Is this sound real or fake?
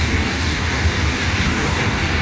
fake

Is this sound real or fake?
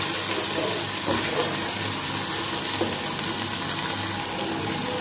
real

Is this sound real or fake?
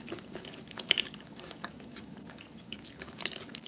fake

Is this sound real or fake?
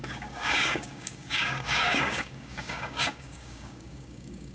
fake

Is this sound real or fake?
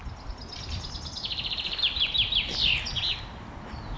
real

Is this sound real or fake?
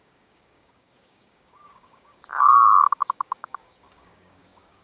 fake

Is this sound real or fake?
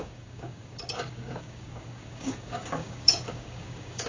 fake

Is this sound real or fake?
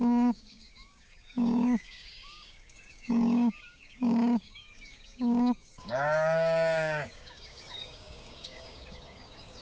fake